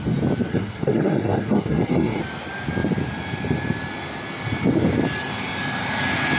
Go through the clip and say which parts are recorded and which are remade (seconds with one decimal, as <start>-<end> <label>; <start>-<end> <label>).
0.0-0.5 recorded; 0.5-2.2 remade; 2.2-6.4 recorded